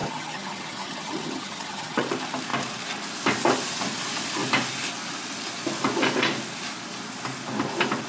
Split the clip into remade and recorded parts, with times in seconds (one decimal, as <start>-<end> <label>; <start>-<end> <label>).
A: 0.0-2.1 remade; 2.1-8.1 recorded